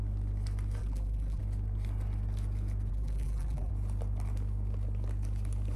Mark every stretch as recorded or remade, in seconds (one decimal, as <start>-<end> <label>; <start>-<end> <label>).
0.0-0.8 recorded; 0.8-1.4 remade; 1.4-2.9 recorded; 2.9-3.7 remade; 3.7-5.8 recorded